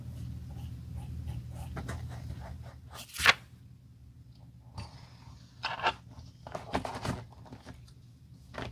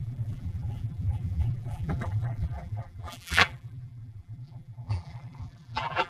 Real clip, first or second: first